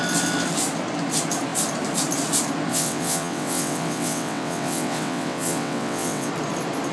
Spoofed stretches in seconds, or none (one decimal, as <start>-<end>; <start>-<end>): 2.7-6.3